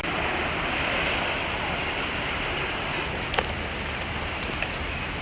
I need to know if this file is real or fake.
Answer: real